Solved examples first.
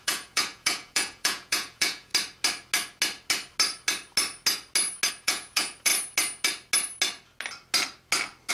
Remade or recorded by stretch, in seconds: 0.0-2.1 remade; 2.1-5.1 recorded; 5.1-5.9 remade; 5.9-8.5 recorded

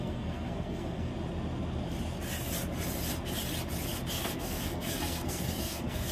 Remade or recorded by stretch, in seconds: 0.0-1.1 remade; 1.1-4.1 recorded; 4.1-6.1 remade

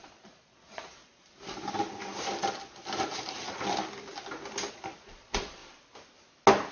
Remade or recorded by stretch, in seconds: 0.0-1.0 remade; 1.0-4.7 recorded; 4.7-5.6 remade; 5.6-6.7 recorded

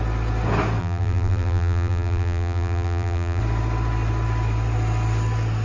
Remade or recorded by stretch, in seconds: 0.0-0.8 recorded; 0.8-3.4 remade; 3.4-5.6 recorded

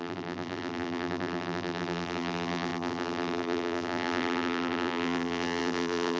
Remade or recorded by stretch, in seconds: 0.0-6.2 remade